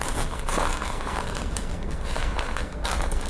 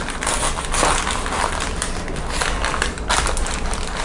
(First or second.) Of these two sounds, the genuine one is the second